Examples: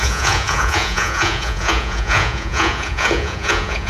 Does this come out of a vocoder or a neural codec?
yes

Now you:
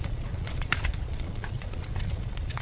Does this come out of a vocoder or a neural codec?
yes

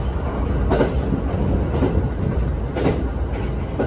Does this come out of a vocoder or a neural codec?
no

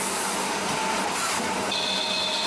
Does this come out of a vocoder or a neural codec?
no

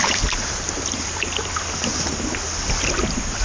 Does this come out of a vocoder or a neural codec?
no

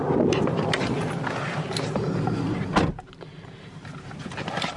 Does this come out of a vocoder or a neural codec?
no